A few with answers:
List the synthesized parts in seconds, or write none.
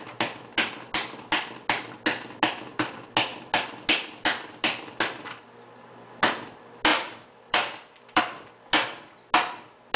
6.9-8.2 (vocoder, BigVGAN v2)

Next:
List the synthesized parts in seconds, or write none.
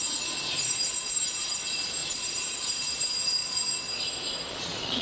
0.0-5.0 (vocoder, Vocos)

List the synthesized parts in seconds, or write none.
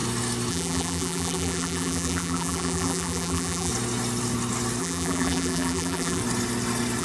0.5-3.7 (vocoder, BigVGAN v2); 4.8-6.2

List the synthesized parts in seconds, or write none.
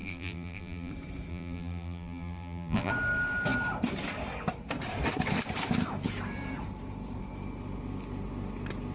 0.0-0.9 (vocoder, BigVGAN v2); 1.3-2.9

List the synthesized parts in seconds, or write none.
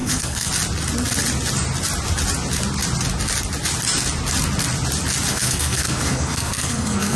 0.0-0.5 (codec, SNAC); 5.3-7.2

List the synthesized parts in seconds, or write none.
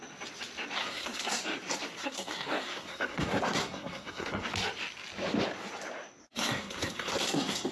0.8-1.4 (codec, SNAC); 2.0-4.5; 6.2-7.7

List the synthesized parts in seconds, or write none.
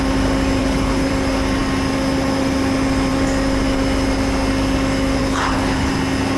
0.6-1.1 (codec, HILCodec); 5.2-5.9